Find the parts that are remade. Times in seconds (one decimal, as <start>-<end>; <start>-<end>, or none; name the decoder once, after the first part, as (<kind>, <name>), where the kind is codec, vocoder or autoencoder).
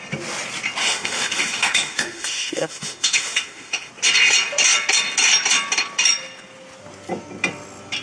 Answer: 0.8-3.9 (autoencoder, DAC-VAE)